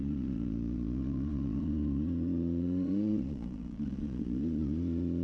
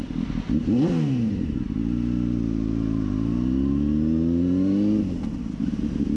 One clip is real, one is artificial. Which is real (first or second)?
second